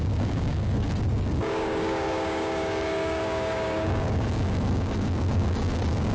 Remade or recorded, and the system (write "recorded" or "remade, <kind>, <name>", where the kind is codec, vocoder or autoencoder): remade, codec, DAC